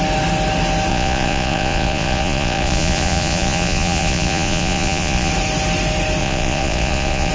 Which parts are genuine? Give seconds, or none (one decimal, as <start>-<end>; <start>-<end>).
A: 0.0-0.9; 5.3-6.2